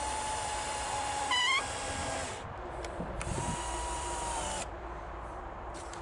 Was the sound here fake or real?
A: fake